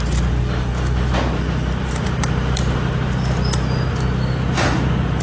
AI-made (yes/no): no